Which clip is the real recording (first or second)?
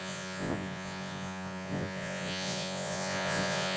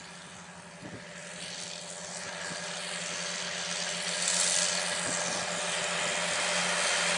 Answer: second